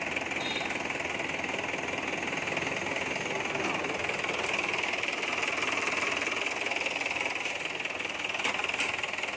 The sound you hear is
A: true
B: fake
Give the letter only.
A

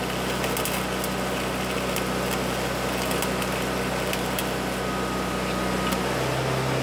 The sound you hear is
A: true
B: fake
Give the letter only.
A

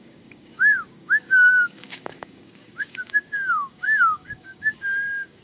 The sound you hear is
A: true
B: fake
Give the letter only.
B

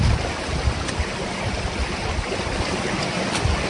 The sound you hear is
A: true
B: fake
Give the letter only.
A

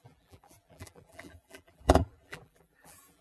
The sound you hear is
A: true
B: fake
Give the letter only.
B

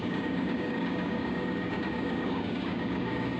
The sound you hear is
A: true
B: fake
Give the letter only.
B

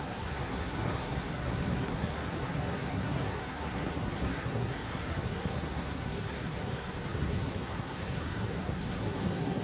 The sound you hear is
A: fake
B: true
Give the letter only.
A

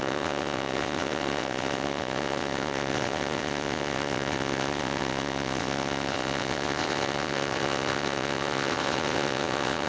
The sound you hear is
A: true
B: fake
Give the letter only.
B